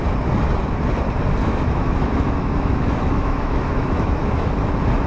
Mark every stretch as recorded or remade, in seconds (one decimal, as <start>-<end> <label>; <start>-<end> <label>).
0.0-1.4 recorded; 1.4-4.5 remade; 4.5-5.1 recorded